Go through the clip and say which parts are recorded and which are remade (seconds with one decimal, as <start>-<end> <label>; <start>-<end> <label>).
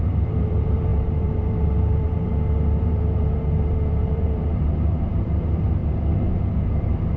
0.0-5.8 remade; 5.8-6.8 recorded; 6.8-7.2 remade